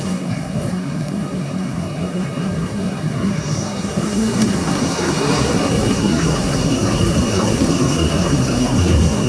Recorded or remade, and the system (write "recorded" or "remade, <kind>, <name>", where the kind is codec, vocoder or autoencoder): remade, codec, SNAC